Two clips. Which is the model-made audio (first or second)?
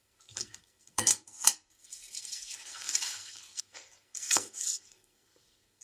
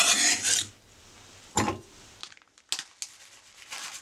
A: first